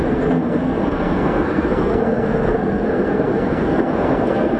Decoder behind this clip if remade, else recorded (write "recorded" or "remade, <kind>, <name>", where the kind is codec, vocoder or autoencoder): remade, codec, SNAC